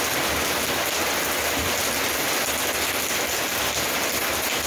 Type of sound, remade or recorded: recorded